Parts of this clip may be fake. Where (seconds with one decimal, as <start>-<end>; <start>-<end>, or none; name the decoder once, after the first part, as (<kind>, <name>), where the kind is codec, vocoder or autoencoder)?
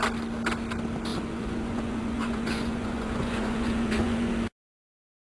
1.1-4.3 (vocoder, Vocos)